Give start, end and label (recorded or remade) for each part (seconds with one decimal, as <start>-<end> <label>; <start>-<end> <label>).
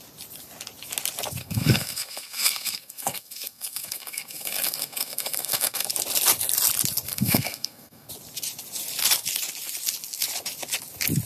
0.0-1.4 recorded; 1.4-5.9 remade; 5.9-7.1 recorded; 7.1-8.1 remade; 8.1-11.3 recorded